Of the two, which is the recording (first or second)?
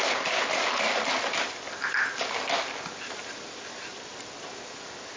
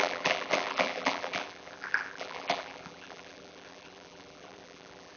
first